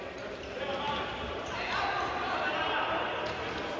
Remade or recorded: remade